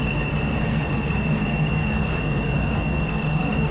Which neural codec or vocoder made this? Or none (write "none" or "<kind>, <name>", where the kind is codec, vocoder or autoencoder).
codec, SNAC